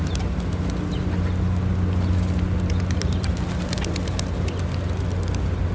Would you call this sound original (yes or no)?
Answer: yes